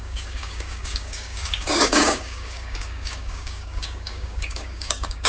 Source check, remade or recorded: remade